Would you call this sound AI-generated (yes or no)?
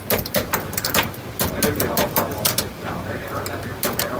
no